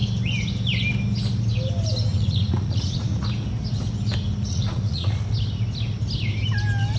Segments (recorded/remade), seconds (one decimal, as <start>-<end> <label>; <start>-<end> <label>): 0.0-2.1 recorded; 2.1-3.2 remade; 3.2-4.5 recorded; 4.5-5.2 remade; 5.2-7.0 recorded